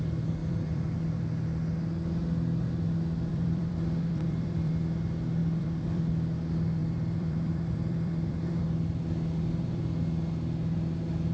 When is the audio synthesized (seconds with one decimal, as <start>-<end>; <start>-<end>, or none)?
0.4-1.3; 3.3-4.7; 5.4-6.0; 6.8-8.6